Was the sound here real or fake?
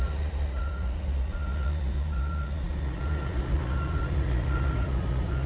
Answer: fake